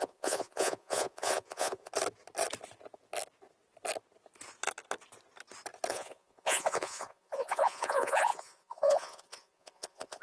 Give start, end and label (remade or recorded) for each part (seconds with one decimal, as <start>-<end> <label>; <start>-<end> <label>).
0.0-1.9 remade; 1.9-5.9 recorded; 5.9-10.2 remade